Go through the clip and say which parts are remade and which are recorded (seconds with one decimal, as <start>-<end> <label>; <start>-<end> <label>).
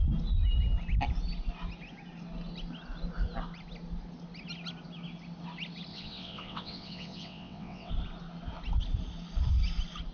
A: 0.0-5.9 recorded; 5.9-7.9 remade; 7.9-10.1 recorded